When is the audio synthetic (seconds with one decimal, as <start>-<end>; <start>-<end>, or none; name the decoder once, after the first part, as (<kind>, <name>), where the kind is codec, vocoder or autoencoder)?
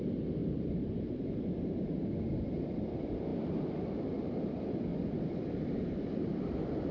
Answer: 0.4-1.9 (vocoder, BigVGAN v2)